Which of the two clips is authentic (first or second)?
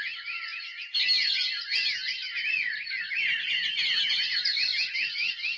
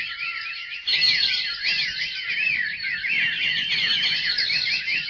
first